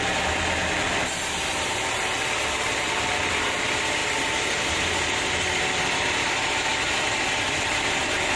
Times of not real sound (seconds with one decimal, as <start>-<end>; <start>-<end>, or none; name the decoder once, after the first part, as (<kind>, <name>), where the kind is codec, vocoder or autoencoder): 0.0-4.0 (vocoder, BigVGAN v2); 6.3-6.7; 7.7-8.4